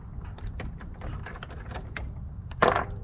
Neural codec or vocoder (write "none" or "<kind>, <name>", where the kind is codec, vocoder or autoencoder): none